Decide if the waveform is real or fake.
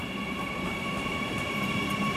fake